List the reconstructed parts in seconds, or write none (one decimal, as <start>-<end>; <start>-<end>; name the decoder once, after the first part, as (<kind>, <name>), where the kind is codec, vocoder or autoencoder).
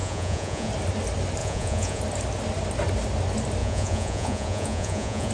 0.0-0.7 (vocoder, Vocos); 1.4-2.0; 3.6-5.3